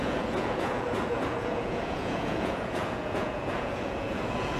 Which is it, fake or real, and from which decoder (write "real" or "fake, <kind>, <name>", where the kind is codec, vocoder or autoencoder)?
fake, vocoder, Vocos